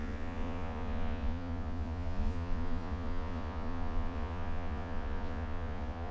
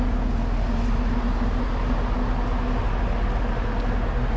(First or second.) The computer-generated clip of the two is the first